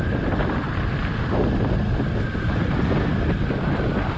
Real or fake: real